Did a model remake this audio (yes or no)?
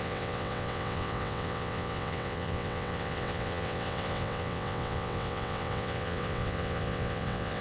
yes